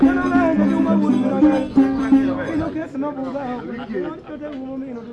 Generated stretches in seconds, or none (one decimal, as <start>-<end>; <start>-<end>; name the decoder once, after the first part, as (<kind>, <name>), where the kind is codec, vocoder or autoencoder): none